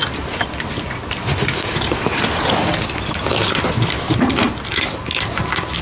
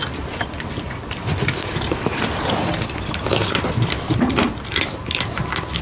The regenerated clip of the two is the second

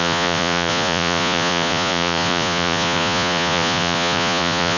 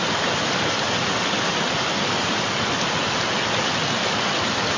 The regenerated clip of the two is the first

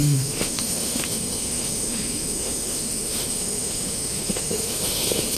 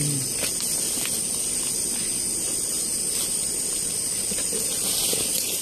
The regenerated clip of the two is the first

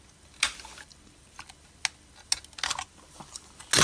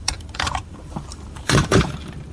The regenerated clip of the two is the second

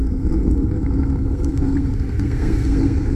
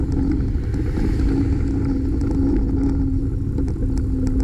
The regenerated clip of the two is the first